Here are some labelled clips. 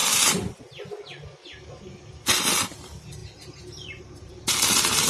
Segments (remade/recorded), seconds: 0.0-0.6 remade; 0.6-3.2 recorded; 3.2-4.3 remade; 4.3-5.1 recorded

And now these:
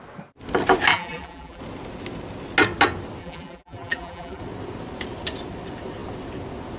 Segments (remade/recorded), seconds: 0.0-0.9 recorded; 0.9-1.6 remade; 1.6-3.2 recorded; 3.2-4.4 remade; 4.4-6.8 recorded

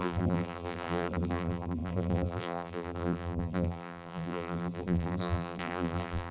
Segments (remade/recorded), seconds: 0.0-6.3 remade

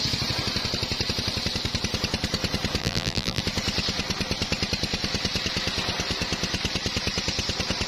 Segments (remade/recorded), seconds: 0.0-2.8 recorded; 2.8-3.4 remade; 3.4-7.9 recorded